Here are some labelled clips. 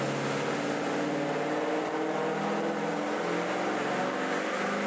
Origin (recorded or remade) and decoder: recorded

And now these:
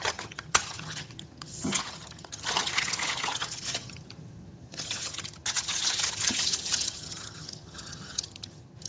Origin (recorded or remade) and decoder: remade, vocoder, HiFi-GAN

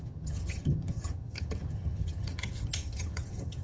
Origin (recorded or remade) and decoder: remade, vocoder, HiFi-GAN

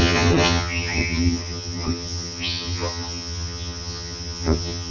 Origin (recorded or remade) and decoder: remade, vocoder, HiFi-GAN